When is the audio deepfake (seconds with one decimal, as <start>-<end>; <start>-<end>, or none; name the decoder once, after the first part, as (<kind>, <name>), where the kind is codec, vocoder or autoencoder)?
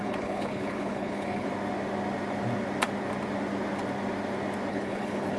0.0-1.5 (codec, HILCodec); 4.7-5.4